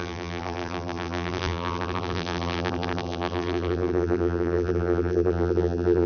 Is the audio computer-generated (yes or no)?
yes